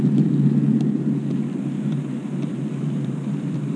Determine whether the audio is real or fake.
real